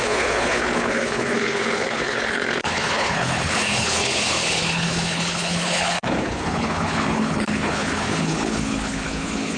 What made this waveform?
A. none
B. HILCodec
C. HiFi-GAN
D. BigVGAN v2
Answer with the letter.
B